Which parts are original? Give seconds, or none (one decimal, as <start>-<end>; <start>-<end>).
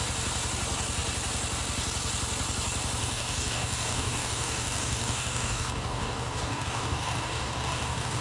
0.0-3.0